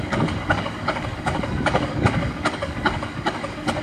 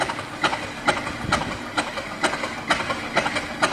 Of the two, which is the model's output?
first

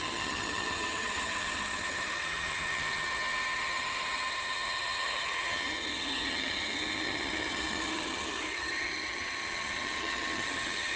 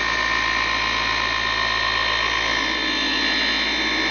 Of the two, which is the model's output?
first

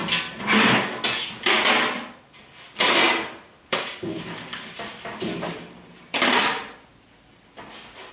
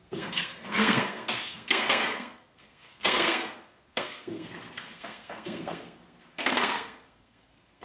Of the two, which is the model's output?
second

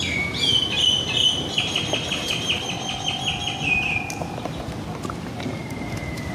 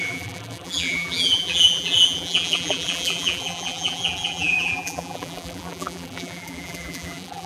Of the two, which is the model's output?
second